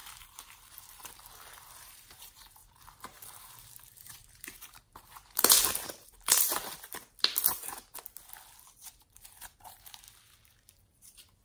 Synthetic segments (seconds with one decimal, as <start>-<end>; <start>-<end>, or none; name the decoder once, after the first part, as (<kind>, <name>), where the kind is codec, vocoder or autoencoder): 0.0-7.0 (vocoder, BigVGAN v2); 8.7-11.4